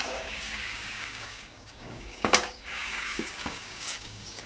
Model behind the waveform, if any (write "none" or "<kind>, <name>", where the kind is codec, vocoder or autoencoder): codec, DAC